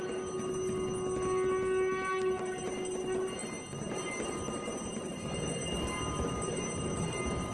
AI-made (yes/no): no